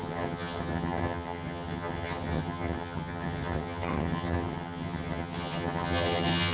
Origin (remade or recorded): remade